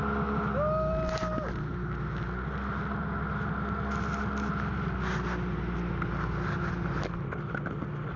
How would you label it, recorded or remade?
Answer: recorded